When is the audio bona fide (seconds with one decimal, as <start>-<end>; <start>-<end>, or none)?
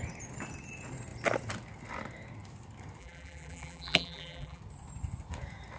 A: 0.0-3.0; 4.6-5.8